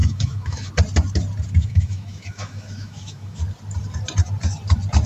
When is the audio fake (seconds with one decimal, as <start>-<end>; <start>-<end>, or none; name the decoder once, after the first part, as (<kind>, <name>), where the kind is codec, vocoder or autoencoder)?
0.0-0.7 (autoencoder, DAC-VAE); 1.6-3.4